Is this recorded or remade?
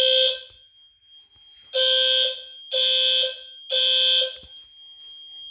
recorded